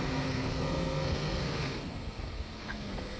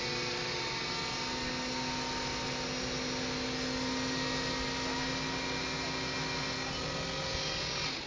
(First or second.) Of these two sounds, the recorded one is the second